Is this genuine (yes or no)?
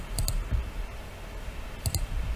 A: yes